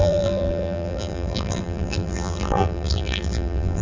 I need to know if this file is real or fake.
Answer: fake